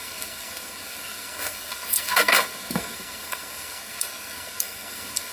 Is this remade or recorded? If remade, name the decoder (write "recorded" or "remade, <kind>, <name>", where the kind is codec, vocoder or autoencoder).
remade, codec, SNAC